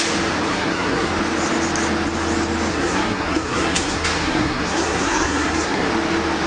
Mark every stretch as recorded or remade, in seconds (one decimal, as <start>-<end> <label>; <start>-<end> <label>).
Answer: 0.0-0.5 recorded; 0.5-1.1 remade; 1.1-2.7 recorded; 2.7-5.9 remade; 5.9-6.5 recorded